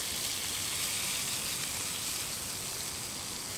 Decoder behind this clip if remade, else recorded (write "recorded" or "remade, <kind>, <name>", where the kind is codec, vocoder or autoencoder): recorded